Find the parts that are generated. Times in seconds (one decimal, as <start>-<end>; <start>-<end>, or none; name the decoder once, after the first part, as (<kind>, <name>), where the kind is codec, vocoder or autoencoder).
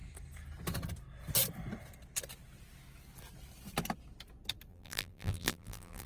4.7-6.1 (vocoder, BigVGAN v2)